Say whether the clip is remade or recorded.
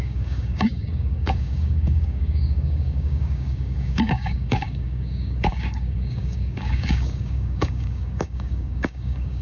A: remade